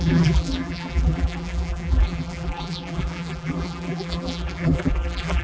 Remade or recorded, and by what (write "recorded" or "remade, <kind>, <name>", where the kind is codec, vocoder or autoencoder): remade, vocoder, BigVGAN v2